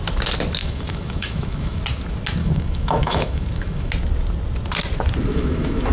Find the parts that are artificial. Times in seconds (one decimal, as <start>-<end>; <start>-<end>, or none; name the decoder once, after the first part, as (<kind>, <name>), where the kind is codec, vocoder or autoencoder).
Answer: 0.6-1.8 (autoencoder, DAC-VAE); 2.4-3.9; 5.3-5.9